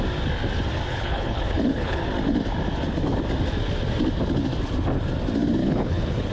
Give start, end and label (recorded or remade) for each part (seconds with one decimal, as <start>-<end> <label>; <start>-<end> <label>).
0.0-0.9 recorded; 0.9-2.0 remade; 2.0-5.6 recorded; 5.6-6.3 remade